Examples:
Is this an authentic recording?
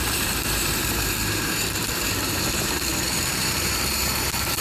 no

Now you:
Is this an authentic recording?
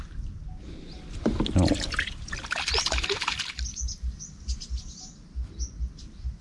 yes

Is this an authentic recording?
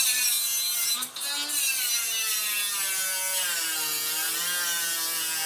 yes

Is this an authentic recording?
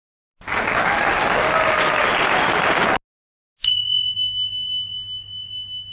yes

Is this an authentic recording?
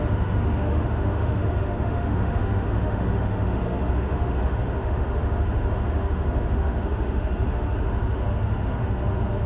no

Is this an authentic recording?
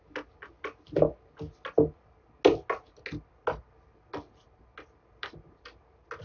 yes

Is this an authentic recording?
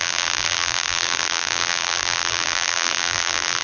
no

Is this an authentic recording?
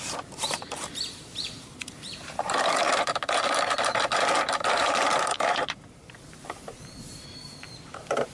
no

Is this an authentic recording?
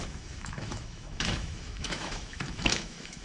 no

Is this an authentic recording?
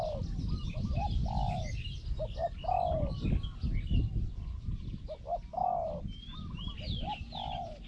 yes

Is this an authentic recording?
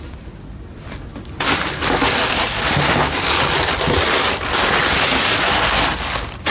yes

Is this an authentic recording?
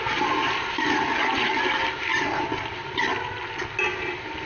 yes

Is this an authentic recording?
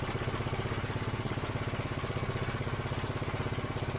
yes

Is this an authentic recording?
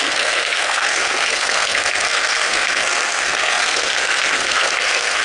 no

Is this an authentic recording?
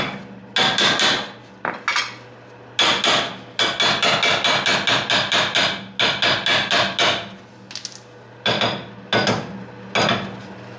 yes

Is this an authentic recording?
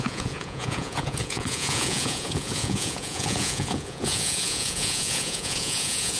no